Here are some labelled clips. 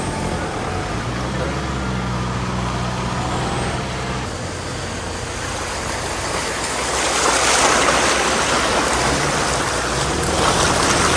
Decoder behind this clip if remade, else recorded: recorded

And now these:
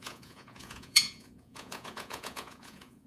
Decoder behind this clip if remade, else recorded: remade, vocoder, Vocos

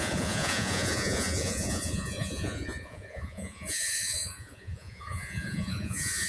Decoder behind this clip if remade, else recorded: remade, vocoder, Vocos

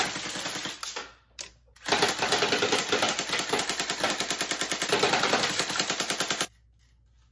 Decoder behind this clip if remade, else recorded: recorded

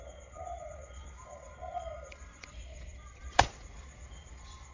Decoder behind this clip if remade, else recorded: remade, vocoder, Vocos